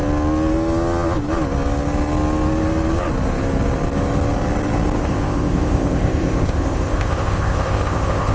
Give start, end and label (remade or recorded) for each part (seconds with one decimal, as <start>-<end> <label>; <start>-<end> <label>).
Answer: 0.0-5.0 recorded; 5.0-8.3 remade